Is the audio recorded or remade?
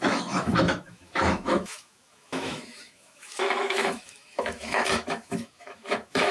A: remade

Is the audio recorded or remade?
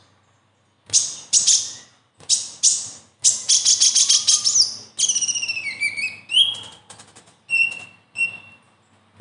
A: recorded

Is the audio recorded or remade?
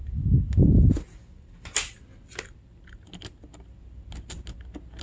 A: recorded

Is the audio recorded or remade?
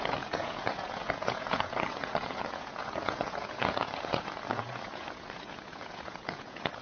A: remade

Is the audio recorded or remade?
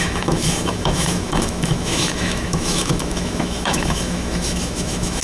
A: remade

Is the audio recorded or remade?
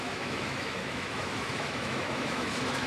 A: remade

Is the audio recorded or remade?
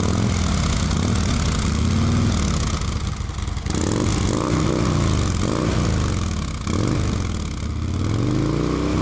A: recorded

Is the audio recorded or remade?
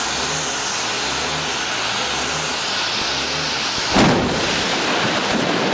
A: recorded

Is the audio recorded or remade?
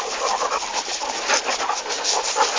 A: recorded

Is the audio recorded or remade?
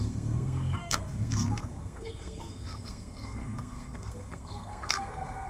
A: remade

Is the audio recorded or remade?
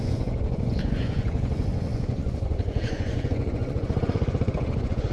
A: remade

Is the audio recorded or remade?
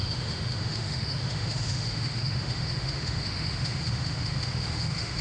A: remade